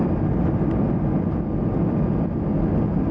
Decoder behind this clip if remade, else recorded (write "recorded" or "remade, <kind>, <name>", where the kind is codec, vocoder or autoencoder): recorded